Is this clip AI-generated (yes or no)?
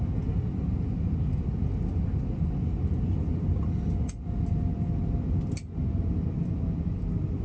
no